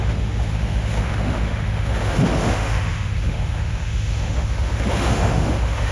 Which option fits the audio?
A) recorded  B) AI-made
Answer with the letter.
B